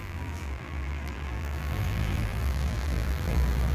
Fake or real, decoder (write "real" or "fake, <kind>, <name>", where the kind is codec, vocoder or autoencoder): fake, vocoder, BigVGAN v2